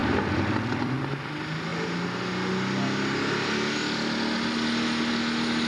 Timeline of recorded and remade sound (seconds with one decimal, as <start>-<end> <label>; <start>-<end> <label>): 0.0-1.0 remade; 1.0-5.7 recorded